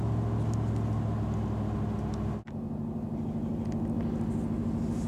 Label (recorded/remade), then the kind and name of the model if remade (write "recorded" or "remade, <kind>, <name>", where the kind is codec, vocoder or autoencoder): recorded